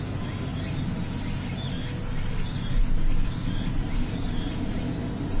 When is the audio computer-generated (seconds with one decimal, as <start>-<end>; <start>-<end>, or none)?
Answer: none